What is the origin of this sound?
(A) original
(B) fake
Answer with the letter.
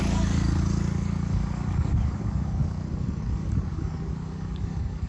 B